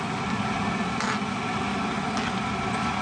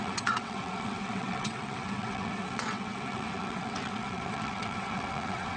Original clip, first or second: first